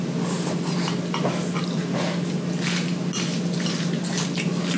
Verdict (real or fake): real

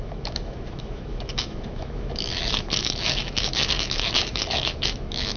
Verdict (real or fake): fake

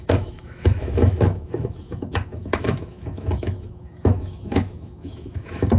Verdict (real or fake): fake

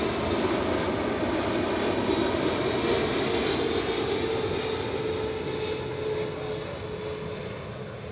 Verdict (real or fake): real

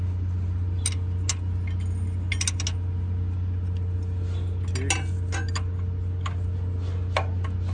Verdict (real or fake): real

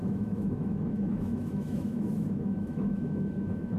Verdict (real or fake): fake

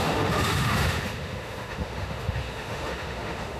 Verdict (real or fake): fake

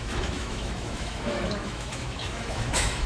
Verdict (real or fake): fake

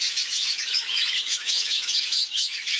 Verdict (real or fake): fake